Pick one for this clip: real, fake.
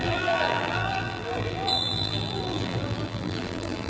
fake